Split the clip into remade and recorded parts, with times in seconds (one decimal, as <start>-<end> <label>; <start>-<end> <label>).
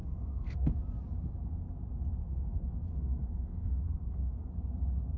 0.0-0.7 remade; 0.7-2.2 recorded; 2.2-4.5 remade; 4.5-5.2 recorded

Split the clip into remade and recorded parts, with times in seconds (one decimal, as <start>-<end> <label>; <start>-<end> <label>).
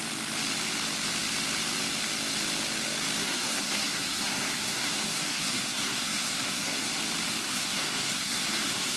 0.0-3.2 recorded; 3.2-7.0 remade; 7.0-7.4 recorded; 7.4-9.0 remade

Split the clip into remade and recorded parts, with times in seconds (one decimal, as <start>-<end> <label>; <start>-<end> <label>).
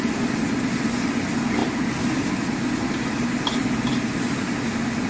0.0-5.1 recorded